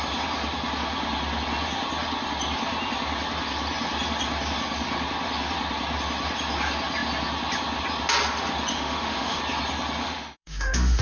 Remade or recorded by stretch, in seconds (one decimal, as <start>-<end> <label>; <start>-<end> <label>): 0.0-8.7 recorded; 8.7-9.4 remade; 9.4-10.0 recorded; 10.0-11.0 remade